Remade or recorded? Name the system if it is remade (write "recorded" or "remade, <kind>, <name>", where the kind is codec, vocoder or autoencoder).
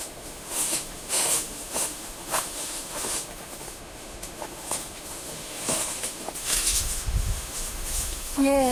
remade, autoencoder, DAC-VAE